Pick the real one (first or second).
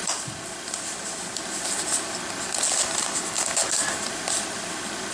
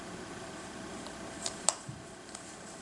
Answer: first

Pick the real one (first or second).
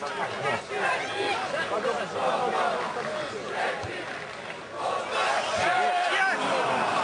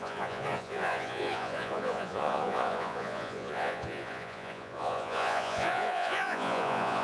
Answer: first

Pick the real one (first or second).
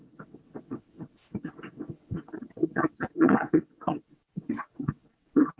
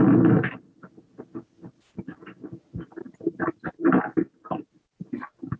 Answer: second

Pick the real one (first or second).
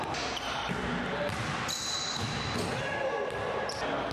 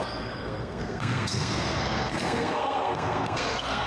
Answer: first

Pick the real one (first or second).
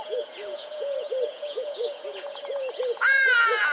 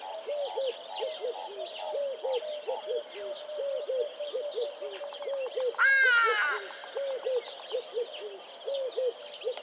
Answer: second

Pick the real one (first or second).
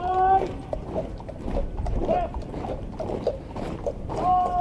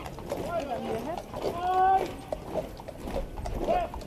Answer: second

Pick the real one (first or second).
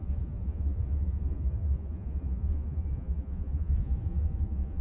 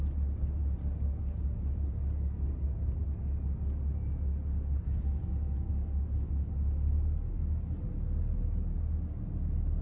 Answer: second